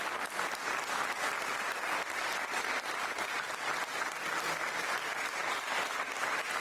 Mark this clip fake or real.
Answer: real